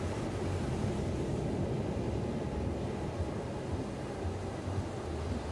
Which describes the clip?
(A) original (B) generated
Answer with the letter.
A